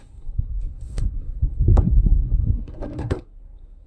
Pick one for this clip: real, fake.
fake